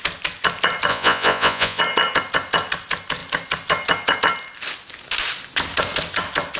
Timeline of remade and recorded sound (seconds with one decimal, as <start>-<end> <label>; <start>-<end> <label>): 0.0-0.9 recorded; 0.9-1.8 remade; 1.8-6.6 recorded